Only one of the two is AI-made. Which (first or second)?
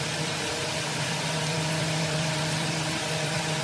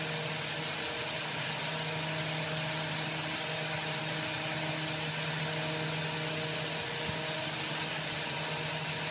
first